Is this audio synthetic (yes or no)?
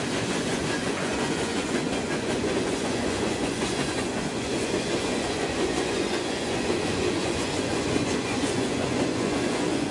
yes